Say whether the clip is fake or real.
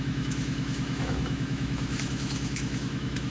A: fake